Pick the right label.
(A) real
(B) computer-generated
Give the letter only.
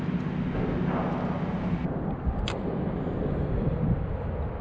A